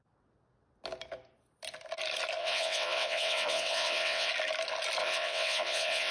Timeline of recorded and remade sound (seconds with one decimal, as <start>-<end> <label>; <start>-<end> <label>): 0.0-2.4 recorded; 2.4-4.3 remade; 4.3-5.0 recorded; 5.0-6.1 remade